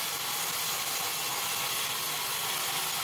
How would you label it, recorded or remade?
recorded